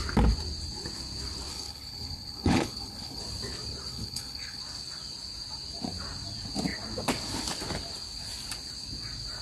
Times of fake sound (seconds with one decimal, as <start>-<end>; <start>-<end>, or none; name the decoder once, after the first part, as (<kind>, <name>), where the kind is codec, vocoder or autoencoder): 1.5-3.2 (codec, HILCodec); 3.9-4.6